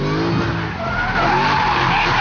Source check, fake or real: real